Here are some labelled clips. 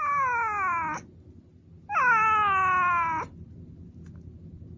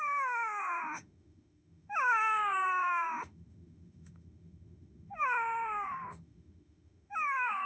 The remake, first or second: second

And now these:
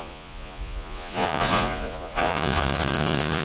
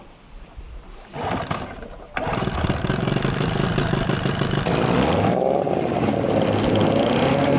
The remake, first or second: first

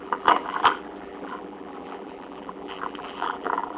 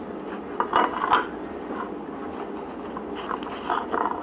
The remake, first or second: first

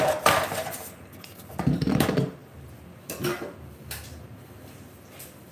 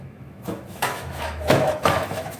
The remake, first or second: second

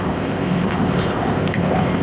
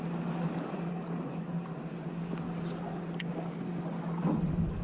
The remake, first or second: first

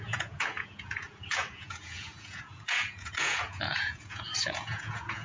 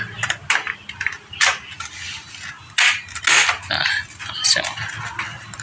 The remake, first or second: first